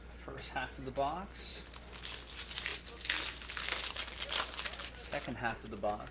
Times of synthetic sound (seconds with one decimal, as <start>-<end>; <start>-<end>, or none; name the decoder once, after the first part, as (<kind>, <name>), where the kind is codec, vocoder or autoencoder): none